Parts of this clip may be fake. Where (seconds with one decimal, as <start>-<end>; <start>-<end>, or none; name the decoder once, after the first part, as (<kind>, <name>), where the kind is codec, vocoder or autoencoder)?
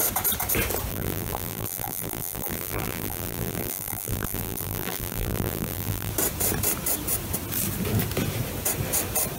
0.9-6.1 (vocoder, BigVGAN v2)